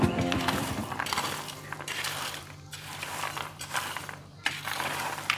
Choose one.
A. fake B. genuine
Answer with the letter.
A